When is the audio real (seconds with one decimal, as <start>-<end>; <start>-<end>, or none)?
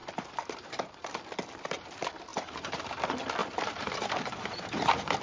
1.2-2.3; 3.0-3.4